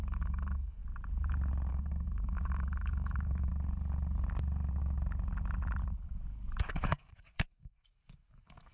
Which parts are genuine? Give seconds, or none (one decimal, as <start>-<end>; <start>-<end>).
0.8-1.7; 3.5-6.7